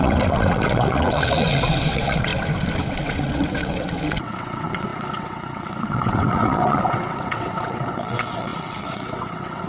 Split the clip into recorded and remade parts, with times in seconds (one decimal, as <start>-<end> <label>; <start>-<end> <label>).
0.0-2.3 remade; 2.3-3.0 recorded; 3.0-9.7 remade